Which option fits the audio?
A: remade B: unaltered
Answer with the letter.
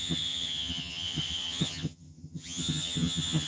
A